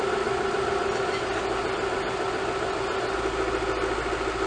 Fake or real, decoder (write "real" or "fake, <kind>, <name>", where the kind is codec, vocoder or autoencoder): real